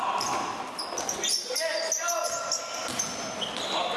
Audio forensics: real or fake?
real